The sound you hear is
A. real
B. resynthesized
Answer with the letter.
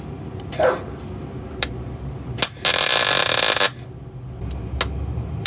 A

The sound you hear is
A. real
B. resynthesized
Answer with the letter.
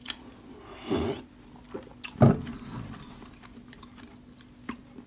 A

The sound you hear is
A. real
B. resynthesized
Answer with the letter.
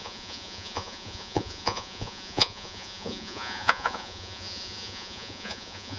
B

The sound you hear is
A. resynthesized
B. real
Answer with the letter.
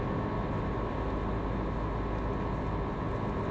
B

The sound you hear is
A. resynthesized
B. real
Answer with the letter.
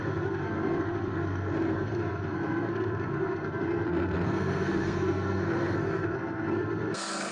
A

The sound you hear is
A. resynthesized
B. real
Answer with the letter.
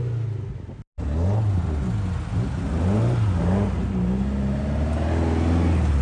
B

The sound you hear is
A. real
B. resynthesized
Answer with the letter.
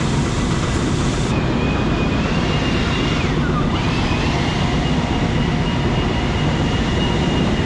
A